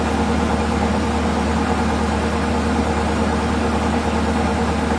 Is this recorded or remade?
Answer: recorded